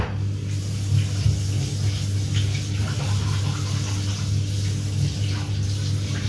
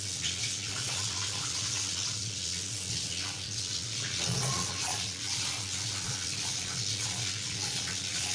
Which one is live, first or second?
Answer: first